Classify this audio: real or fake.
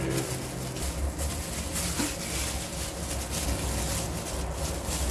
real